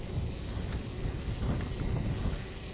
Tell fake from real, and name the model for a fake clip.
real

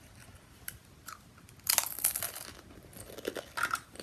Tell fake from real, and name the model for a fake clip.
real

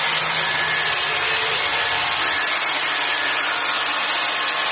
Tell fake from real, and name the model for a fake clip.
real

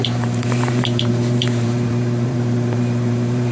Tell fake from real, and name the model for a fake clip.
fake, vocoder, BigVGAN v2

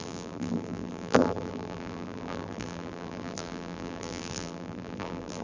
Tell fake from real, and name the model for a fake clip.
fake, vocoder, BigVGAN v2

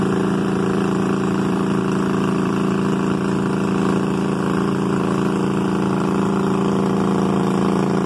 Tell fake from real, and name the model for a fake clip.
fake, vocoder, BigVGAN v2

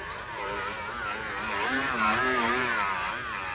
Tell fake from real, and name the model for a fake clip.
fake, vocoder, BigVGAN v2